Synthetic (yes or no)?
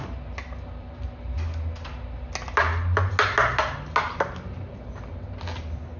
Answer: no